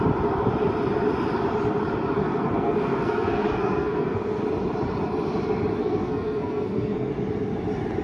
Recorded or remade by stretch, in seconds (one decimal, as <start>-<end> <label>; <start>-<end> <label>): 0.0-2.2 recorded; 2.2-4.4 remade; 4.4-5.8 recorded; 5.8-7.1 remade; 7.1-8.0 recorded